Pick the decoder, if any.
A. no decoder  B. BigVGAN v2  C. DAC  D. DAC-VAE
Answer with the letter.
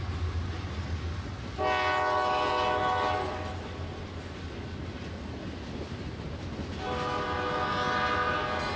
A